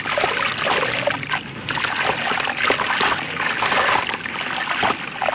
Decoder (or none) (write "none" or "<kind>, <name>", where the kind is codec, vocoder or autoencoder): none